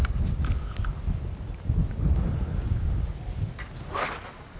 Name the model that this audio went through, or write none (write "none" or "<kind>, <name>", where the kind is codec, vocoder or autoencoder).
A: none